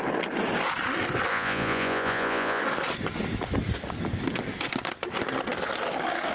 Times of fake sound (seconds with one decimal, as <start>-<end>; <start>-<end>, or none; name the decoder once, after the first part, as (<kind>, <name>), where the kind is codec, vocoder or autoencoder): 1.3-2.6 (vocoder, Vocos)